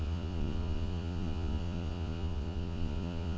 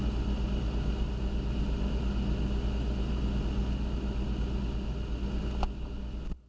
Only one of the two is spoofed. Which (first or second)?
first